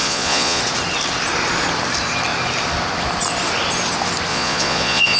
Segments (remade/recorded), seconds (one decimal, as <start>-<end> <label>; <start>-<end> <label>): 0.0-0.6 remade; 0.6-4.3 recorded; 4.3-5.2 remade